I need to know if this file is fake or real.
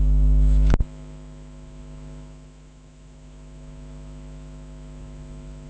fake